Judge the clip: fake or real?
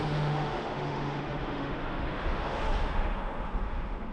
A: fake